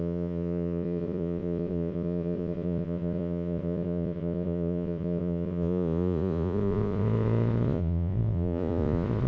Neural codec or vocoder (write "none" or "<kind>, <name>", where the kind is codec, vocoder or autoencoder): vocoder, Vocos